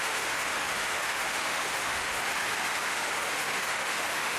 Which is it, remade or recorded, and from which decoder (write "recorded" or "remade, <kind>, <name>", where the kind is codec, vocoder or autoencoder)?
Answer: remade, autoencoder, DAC-VAE